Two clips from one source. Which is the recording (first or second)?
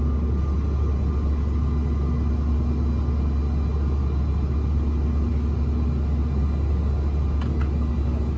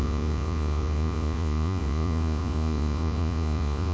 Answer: first